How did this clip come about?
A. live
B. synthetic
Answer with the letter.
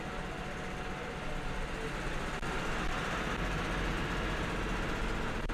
A